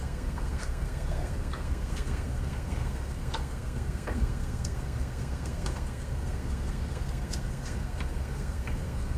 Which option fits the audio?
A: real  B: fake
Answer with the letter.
B